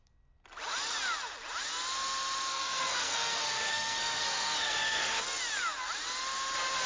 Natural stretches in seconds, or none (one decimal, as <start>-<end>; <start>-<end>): 0.0-2.5; 5.2-6.9